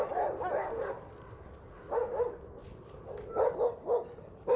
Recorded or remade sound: recorded